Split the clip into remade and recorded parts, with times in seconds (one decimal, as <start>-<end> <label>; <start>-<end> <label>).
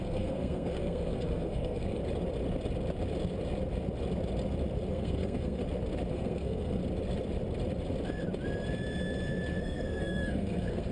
0.0-2.0 remade; 2.0-4.9 recorded; 4.9-5.6 remade; 5.6-6.1 recorded; 6.1-6.8 remade; 6.8-9.6 recorded; 9.6-10.9 remade